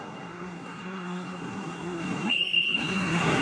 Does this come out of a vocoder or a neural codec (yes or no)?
yes